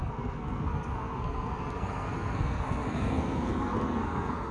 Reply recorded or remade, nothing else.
remade